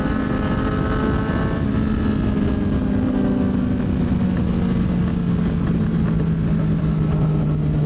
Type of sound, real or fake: real